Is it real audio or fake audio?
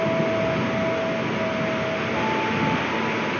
real